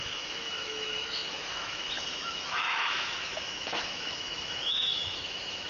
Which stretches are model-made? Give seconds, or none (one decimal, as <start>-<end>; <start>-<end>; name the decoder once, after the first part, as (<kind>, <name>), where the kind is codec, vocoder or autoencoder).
0.0-5.7 (autoencoder, DAC-VAE)